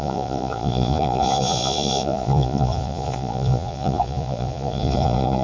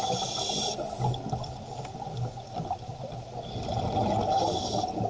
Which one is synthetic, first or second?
first